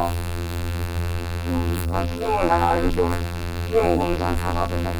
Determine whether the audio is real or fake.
fake